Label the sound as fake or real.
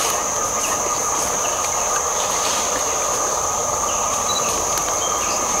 real